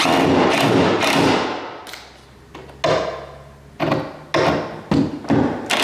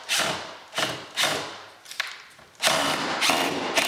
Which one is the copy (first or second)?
second